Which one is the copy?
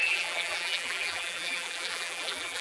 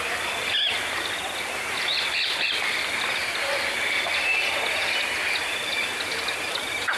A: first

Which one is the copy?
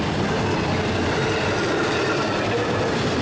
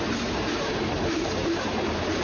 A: second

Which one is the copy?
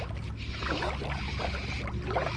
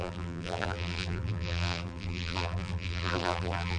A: second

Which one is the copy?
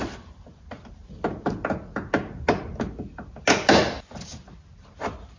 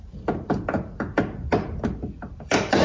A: second